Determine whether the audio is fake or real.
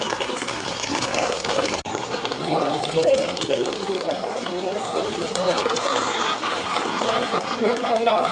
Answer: fake